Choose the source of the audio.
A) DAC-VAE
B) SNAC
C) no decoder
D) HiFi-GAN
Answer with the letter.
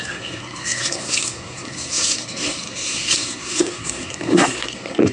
B